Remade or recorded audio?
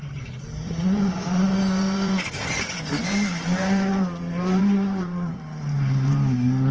remade